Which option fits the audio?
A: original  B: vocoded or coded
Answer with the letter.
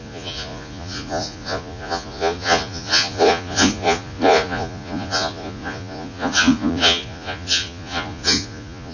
B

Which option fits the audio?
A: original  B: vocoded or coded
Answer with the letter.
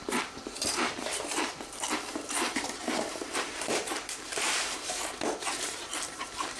B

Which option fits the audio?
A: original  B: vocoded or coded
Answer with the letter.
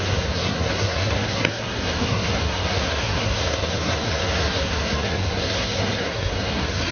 B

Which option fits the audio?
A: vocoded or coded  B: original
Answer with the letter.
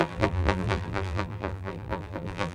A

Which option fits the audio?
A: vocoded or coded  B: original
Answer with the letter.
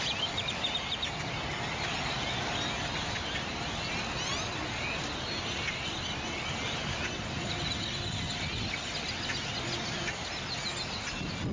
B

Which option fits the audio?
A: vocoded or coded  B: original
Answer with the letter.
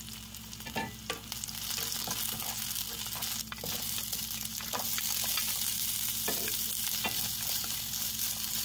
B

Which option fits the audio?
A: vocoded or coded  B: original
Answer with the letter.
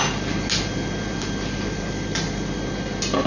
B